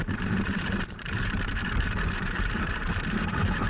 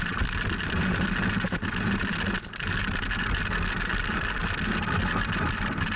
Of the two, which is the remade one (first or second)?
first